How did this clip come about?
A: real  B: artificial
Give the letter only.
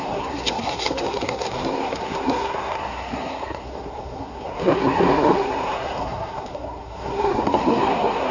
B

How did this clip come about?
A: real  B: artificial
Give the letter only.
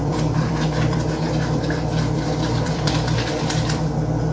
B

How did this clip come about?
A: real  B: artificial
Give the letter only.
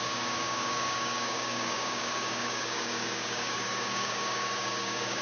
B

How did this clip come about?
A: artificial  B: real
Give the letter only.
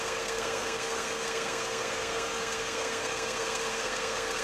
A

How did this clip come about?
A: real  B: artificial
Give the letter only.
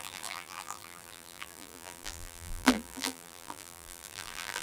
B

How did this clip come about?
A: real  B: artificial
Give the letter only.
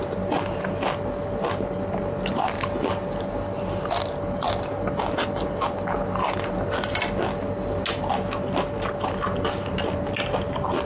A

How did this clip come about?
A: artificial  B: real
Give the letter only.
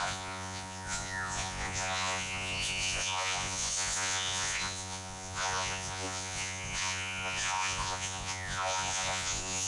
A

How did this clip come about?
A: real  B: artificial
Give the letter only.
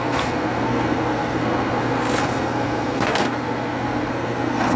B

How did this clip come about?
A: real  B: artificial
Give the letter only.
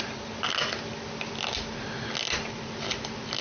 A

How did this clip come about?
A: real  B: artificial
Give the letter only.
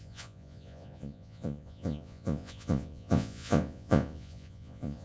B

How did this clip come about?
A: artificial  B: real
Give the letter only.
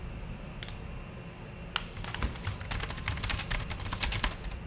B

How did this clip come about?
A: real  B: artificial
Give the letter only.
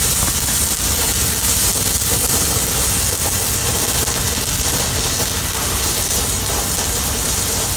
A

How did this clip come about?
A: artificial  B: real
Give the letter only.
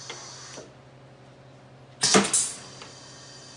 B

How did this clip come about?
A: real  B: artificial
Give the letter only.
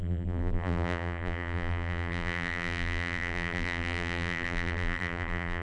B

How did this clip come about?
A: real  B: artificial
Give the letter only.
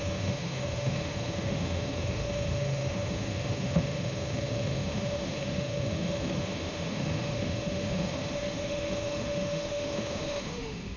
B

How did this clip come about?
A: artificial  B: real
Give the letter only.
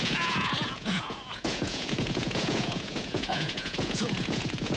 A